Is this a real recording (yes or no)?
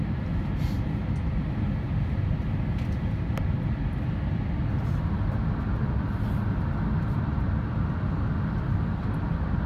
yes